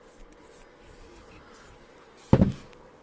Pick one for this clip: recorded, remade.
recorded